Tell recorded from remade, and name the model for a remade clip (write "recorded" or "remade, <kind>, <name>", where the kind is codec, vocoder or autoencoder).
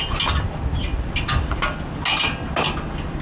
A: recorded